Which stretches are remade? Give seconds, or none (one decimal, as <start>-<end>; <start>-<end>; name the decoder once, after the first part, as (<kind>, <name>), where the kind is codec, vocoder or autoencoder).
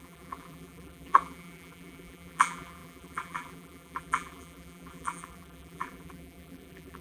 0.0-7.0 (vocoder, BigVGAN v2)